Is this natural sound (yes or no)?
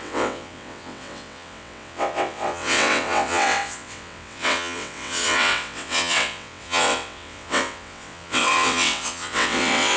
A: no